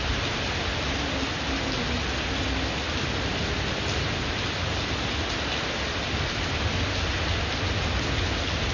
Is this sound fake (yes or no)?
no